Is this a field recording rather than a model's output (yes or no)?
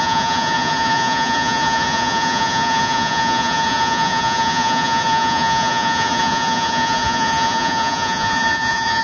no